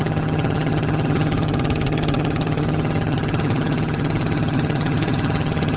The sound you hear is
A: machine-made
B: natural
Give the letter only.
A